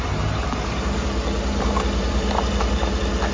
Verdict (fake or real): real